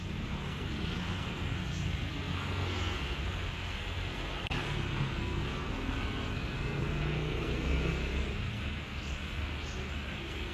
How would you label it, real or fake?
fake